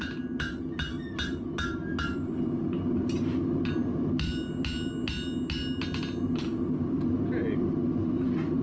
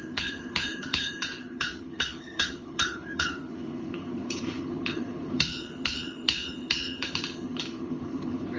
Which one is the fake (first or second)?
second